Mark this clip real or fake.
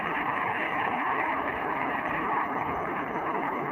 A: fake